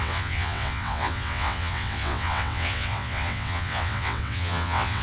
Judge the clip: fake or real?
fake